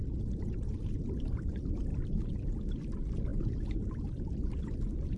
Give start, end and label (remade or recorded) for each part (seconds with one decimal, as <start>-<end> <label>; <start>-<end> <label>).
0.0-5.2 recorded